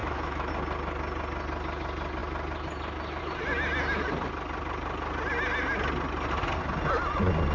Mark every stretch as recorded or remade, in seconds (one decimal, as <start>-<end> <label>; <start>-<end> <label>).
0.0-0.5 remade; 0.5-7.5 recorded